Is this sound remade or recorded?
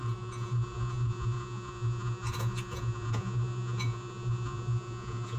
remade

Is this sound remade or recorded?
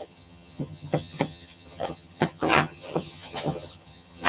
remade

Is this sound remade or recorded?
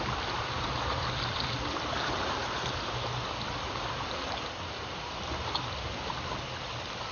recorded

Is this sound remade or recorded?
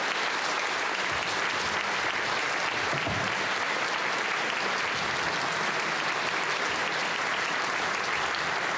recorded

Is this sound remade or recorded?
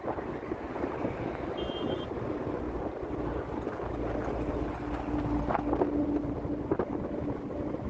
recorded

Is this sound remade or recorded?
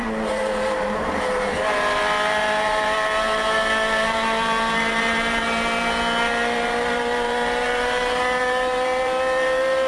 remade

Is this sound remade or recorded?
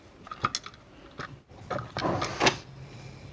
recorded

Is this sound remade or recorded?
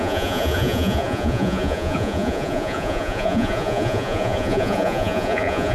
remade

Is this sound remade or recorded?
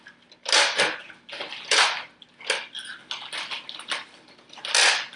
recorded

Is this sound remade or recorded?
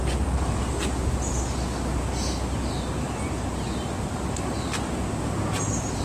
recorded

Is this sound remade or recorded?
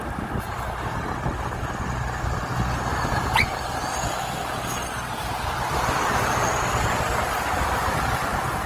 recorded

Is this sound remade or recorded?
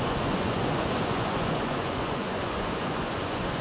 remade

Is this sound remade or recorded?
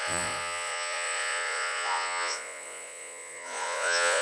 remade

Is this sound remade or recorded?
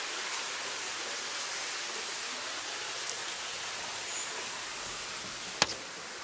recorded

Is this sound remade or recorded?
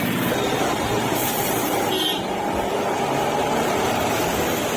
remade